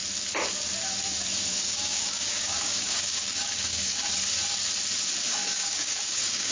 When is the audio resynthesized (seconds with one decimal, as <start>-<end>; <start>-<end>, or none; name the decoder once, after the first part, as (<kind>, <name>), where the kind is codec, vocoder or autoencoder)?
1.5-4.1 (codec, DAC); 5.4-6.5